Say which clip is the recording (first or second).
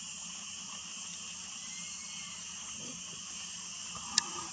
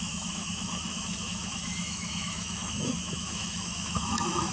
first